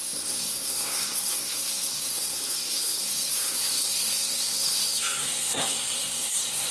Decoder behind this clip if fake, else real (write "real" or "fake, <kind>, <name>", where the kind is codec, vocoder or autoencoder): fake, codec, SNAC